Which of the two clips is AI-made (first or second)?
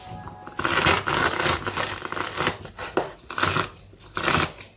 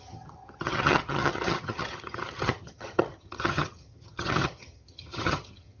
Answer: second